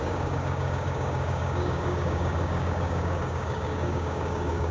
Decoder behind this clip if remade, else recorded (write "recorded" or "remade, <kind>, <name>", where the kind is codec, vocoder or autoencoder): remade, codec, DAC